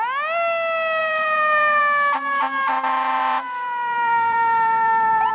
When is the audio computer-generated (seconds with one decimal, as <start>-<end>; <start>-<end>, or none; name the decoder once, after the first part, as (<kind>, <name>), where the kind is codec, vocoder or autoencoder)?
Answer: 1.0-1.8 (vocoder, BigVGAN v2); 3.2-5.3